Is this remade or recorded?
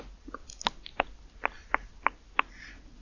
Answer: recorded